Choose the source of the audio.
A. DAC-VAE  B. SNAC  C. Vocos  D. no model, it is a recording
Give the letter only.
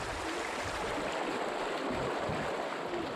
D